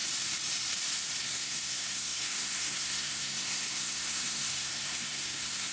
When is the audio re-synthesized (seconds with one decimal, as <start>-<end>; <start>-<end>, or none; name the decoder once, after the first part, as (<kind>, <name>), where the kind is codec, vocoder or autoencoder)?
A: 1.2-5.7 (codec, SNAC)

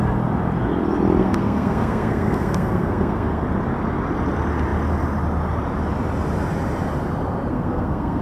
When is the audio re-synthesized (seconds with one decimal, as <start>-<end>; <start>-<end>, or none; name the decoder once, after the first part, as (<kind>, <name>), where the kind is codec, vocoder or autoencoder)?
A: 1.2-3.4 (codec, SNAC); 7.5-8.2

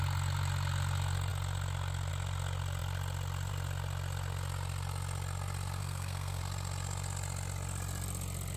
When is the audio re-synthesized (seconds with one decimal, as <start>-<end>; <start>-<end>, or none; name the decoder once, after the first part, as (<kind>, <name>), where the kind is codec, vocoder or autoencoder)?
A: 5.8-6.4 (codec, SNAC)